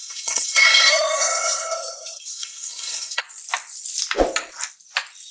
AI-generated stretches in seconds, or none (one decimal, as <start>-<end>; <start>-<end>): 0.0-3.2